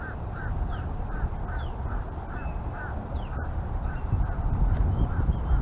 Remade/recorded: recorded